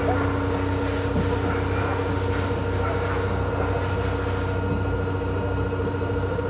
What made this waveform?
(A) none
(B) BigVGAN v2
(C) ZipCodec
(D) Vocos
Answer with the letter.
A